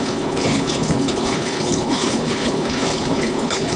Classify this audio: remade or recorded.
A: remade